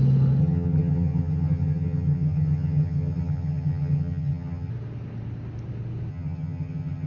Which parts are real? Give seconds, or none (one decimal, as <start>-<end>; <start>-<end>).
0.0-0.4; 4.7-6.1